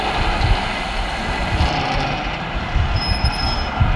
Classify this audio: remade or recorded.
recorded